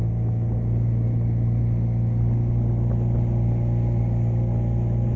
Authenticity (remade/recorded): recorded